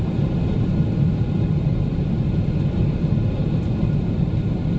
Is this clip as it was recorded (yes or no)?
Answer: yes